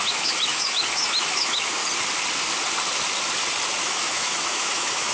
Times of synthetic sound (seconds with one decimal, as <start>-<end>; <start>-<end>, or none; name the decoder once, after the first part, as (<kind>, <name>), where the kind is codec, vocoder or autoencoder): 0.0-1.8 (autoencoder, DAC-VAE); 3.8-5.1